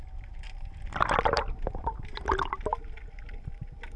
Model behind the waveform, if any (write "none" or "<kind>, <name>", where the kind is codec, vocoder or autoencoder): none